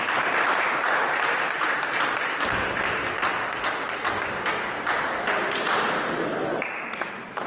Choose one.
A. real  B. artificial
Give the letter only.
B